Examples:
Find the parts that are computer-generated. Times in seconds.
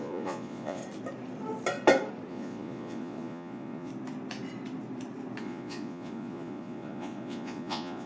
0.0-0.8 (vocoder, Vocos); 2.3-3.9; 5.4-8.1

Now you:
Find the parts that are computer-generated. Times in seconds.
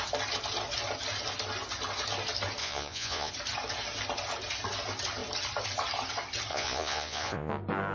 2.6-3.3 (vocoder, Vocos); 6.5-7.5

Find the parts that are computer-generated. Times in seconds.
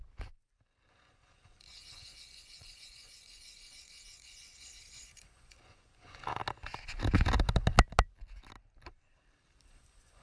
0.9-6.4 (vocoder, Vocos); 9.7-10.2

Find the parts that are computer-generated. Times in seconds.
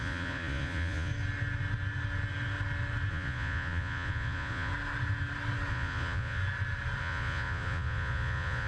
0.0-1.1 (vocoder, Vocos); 3.1-4.7; 5.7-6.4; 7.0-8.7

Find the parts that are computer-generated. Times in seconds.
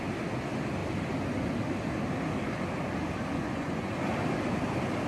3.3-3.9 (vocoder, Vocos)